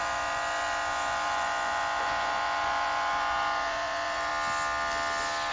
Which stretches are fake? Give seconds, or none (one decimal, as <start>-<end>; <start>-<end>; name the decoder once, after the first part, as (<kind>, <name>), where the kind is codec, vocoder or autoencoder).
0.0-4.3 (vocoder, Vocos)